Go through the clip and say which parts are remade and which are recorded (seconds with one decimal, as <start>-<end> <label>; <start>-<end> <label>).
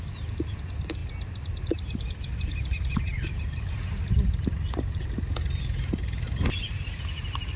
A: 0.0-3.1 recorded; 3.1-5.0 remade; 5.0-7.6 recorded